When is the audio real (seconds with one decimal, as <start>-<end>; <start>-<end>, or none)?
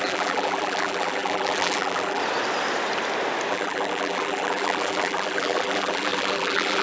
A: 2.2-3.5